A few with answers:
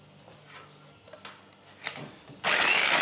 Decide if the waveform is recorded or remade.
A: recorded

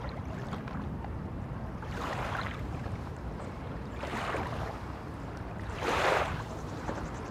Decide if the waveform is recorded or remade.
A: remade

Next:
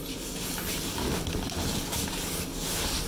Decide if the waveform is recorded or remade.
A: recorded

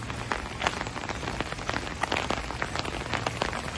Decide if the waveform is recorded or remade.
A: recorded